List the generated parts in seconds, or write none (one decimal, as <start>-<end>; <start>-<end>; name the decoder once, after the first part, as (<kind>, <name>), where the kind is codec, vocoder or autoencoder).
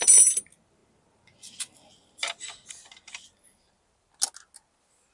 none